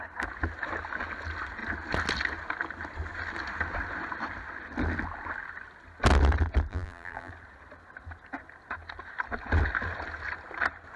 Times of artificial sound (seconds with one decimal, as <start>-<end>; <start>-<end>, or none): 6.7-7.3